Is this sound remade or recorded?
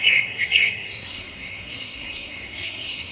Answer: remade